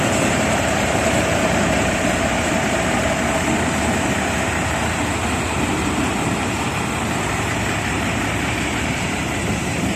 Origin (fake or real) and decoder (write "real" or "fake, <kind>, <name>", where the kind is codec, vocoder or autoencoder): fake, vocoder, BigVGAN v2